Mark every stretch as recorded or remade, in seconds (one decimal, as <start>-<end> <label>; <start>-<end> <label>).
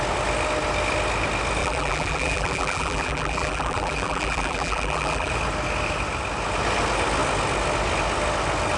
0.0-1.6 recorded; 1.6-5.3 remade; 5.3-8.8 recorded